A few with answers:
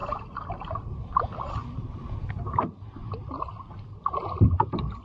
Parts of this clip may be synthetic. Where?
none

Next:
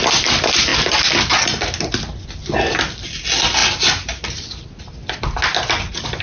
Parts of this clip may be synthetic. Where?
none

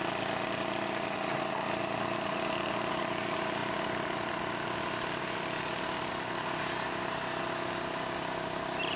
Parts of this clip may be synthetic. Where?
none

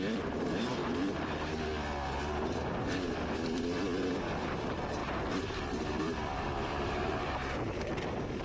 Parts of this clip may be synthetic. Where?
5.0-8.4 (vocoder, BigVGAN v2)

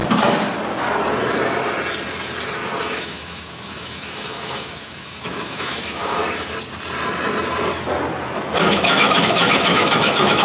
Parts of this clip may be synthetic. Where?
2.8-6.2 (autoencoder, DAC-VAE); 8.6-10.4